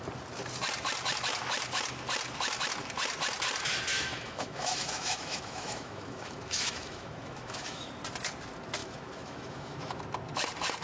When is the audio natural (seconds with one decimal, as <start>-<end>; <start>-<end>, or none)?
0.0-3.9; 7.9-8.8; 10.0-10.8